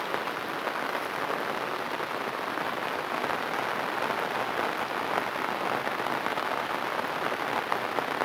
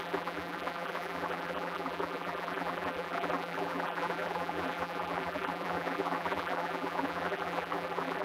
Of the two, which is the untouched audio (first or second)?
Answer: first